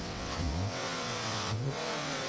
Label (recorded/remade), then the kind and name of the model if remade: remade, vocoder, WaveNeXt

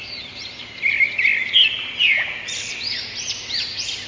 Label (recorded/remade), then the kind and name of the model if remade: remade, vocoder, BigVGAN v2